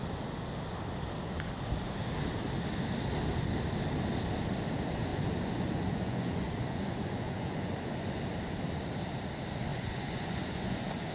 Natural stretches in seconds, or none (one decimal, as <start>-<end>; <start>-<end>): 0.0-5.1; 8.2-9.7